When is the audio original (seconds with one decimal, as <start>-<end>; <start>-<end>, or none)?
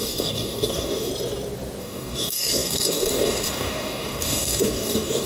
1.1-1.8